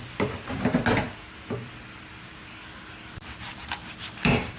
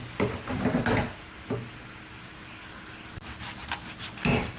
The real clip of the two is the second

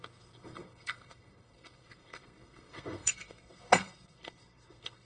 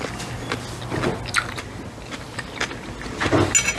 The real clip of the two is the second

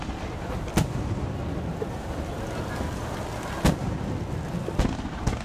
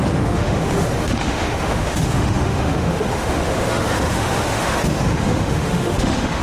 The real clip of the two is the first